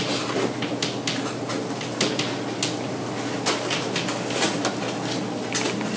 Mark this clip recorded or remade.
recorded